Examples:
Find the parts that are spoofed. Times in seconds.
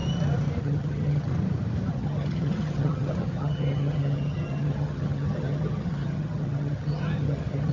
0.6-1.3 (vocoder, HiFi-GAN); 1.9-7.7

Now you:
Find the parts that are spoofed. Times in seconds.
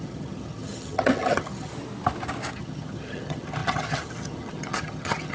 0.0-1.7 (vocoder, HiFi-GAN); 2.5-5.3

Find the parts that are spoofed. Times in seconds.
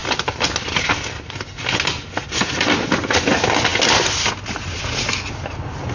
none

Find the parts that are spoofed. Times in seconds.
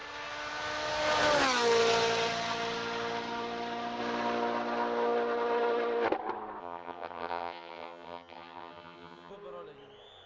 6.6-9.3 (vocoder, HiFi-GAN)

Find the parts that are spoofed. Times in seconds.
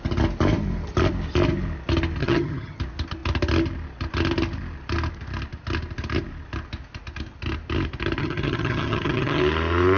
2.2-2.8 (vocoder, HiFi-GAN); 8.2-9.4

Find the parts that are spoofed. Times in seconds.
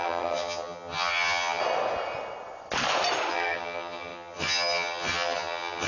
0.0-1.6 (vocoder, HiFi-GAN); 3.3-5.9